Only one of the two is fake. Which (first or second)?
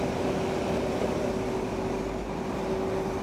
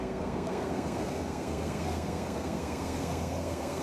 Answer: second